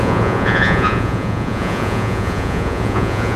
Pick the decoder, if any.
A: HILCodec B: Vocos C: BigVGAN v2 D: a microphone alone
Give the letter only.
B